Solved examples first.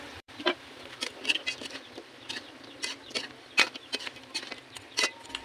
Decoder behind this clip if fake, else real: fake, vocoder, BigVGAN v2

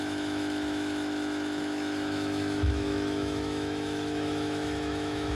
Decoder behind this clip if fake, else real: fake, autoencoder, DAC-VAE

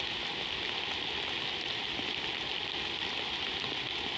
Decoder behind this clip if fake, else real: real